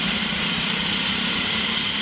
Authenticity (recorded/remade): recorded